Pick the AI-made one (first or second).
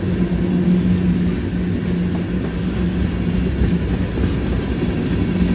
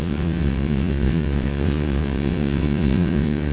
second